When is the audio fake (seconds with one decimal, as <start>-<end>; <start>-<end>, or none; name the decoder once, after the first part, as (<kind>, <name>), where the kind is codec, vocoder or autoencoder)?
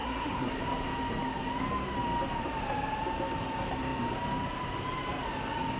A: 0.0-0.5 (codec, SNAC)